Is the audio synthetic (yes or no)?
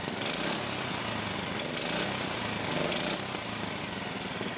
no